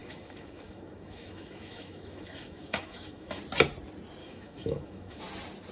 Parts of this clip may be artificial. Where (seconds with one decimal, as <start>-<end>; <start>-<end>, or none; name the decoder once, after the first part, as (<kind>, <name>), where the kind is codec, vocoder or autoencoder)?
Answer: 0.0-3.4 (autoencoder, DAC-VAE); 4.2-5.2